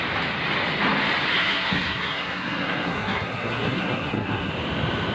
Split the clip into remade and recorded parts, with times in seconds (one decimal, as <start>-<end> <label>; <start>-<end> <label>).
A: 0.0-1.4 recorded; 1.4-4.5 remade; 4.5-5.1 recorded